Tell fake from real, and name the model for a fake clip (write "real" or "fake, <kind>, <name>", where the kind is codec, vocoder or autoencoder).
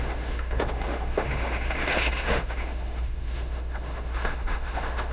fake, autoencoder, DAC-VAE